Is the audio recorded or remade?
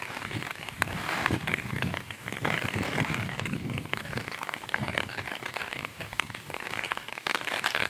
remade